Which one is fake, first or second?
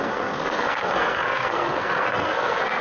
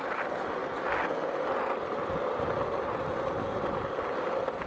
first